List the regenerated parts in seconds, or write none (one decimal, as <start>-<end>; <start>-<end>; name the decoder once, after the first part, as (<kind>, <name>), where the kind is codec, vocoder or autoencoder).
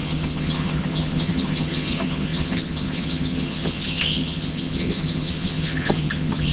0.0-6.5 (vocoder, HiFi-GAN)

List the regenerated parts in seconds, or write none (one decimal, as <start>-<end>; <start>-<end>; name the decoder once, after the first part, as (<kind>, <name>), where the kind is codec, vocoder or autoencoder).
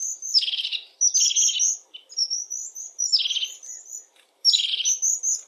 none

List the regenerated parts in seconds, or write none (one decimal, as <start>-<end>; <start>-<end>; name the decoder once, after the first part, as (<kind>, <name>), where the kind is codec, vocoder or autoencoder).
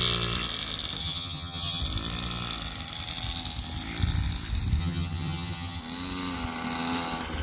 1.0-1.8 (vocoder, HiFi-GAN); 4.8-5.8